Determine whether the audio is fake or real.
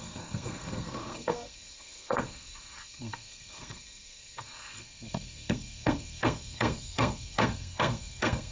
fake